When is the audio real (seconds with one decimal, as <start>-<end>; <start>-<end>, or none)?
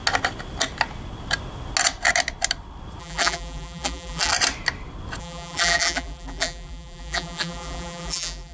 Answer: 0.0-3.0; 4.3-5.2